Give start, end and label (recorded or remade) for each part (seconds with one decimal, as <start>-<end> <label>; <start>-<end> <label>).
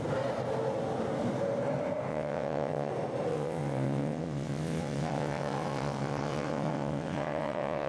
0.0-2.1 recorded; 2.1-2.9 remade; 2.9-3.3 recorded; 3.3-7.9 remade